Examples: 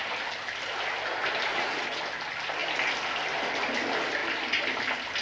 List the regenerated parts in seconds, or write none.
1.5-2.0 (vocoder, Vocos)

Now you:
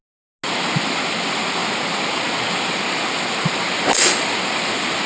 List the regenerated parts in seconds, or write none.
none

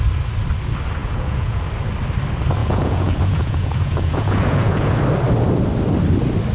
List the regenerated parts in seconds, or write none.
1.0-1.6 (vocoder, Vocos); 2.6-5.0

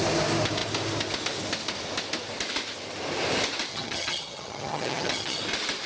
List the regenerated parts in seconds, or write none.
3.7-5.4 (vocoder, HiFi-GAN)